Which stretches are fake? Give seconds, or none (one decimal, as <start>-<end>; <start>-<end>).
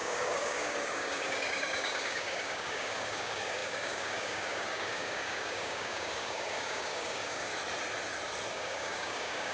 0.0-7.5; 8.5-9.5